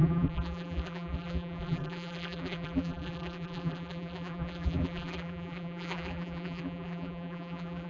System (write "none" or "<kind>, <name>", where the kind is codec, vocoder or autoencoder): vocoder, BigVGAN v2